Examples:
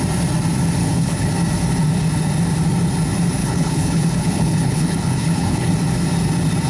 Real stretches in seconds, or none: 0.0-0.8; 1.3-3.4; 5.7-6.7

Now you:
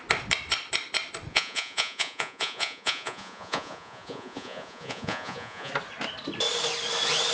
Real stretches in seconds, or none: 0.0-1.3; 5.7-7.3